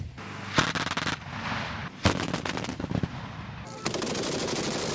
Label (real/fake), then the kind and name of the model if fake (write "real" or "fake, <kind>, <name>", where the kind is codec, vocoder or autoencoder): real